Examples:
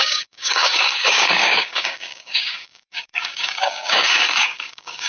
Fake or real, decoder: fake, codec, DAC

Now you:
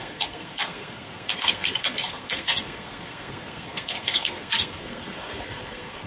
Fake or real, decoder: fake, codec, SNAC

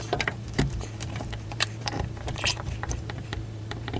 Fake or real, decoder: fake, vocoder, BigVGAN v2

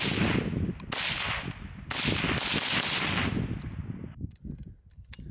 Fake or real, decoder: real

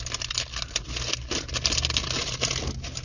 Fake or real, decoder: real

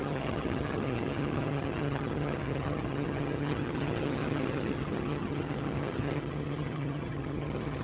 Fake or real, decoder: fake, vocoder, HiFi-GAN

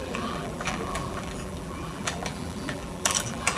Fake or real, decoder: fake, vocoder, BigVGAN v2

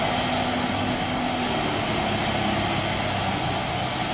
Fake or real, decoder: real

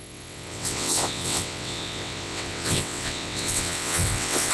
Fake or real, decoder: fake, vocoder, WaveNeXt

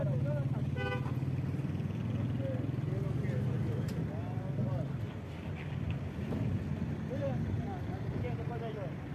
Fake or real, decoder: real